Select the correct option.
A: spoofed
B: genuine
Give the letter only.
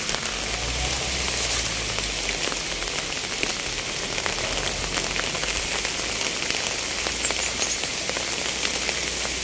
B